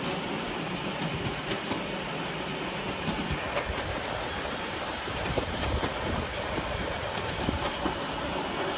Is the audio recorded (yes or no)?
yes